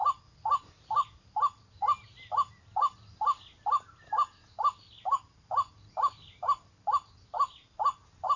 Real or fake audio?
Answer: real